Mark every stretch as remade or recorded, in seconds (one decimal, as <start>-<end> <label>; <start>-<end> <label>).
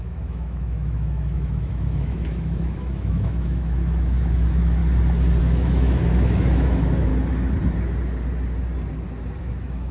0.0-4.8 remade; 4.8-5.4 recorded; 5.4-7.1 remade; 7.1-9.4 recorded; 9.4-9.9 remade